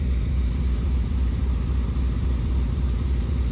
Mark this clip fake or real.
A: real